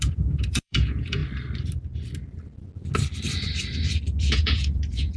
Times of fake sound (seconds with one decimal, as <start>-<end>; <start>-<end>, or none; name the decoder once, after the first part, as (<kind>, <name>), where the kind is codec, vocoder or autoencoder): 0.0-1.2 (vocoder, Vocos); 4.2-5.2